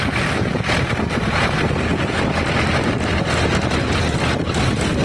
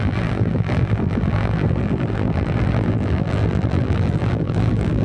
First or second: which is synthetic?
second